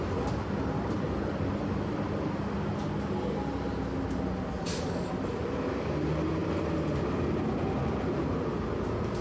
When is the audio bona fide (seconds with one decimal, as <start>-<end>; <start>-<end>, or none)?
0.0-9.2